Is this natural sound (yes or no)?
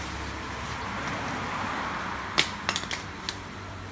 yes